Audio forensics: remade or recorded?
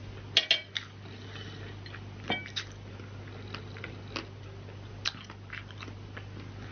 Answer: recorded